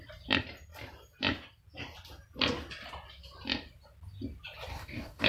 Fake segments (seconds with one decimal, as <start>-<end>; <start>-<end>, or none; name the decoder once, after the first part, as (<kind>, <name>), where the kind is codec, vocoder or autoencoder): 4.7-5.3 (codec, DAC)